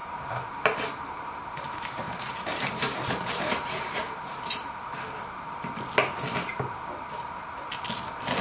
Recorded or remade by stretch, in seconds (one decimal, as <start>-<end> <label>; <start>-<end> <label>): 0.0-4.7 remade; 4.7-8.4 recorded